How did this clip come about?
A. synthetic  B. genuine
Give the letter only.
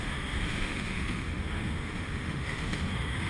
A